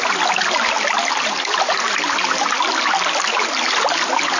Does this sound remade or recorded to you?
recorded